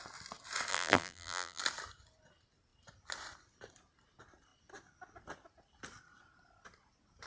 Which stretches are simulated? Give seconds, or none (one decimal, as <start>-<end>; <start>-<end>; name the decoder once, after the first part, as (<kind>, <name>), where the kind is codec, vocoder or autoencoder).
0.7-1.6 (vocoder, BigVGAN v2)